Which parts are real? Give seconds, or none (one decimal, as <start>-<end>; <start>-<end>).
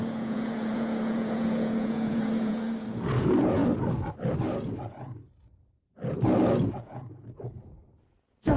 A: 3.6-4.9; 5.8-6.8